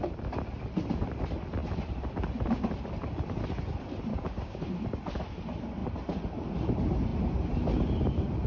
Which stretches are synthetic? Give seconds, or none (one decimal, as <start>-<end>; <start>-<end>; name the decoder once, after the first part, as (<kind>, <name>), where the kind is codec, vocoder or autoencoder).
4.1-4.6 (codec, DAC)